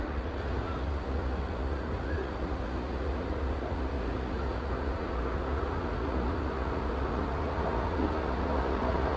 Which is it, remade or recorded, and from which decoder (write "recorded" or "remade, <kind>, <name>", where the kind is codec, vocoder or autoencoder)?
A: remade, vocoder, Vocos